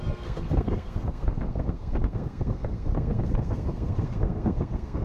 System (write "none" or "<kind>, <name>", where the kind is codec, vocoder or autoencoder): codec, SNAC